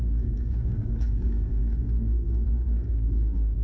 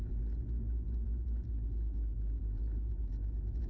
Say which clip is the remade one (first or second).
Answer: first